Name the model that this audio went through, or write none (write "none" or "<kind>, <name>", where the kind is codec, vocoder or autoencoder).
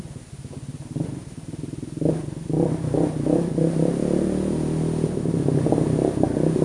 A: none